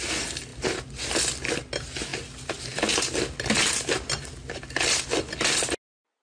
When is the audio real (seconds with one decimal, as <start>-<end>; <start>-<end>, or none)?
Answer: 0.0-6.2